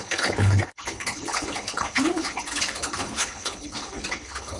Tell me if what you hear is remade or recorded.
remade